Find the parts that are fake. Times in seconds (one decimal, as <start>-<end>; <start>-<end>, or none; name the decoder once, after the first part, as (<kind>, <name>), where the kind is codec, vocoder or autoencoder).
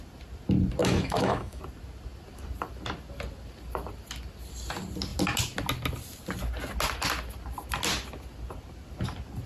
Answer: 0.8-1.6 (autoencoder, DAC-VAE)